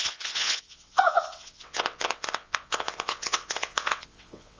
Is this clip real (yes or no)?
no